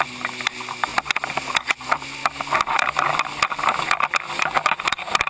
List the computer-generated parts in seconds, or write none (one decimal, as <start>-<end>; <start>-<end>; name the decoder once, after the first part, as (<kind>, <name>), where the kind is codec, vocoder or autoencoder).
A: none